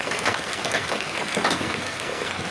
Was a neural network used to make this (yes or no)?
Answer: yes